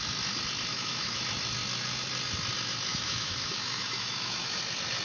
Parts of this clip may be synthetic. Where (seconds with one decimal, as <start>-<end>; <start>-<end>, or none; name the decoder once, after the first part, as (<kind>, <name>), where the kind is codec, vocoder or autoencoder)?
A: 0.7-1.2 (autoencoder, DAC-VAE); 2.9-4.6